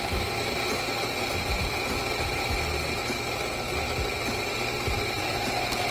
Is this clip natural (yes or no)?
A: yes